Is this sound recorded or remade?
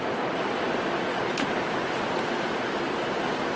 recorded